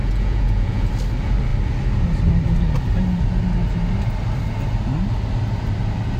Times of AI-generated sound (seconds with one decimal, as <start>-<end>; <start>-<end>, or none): 0.0-0.9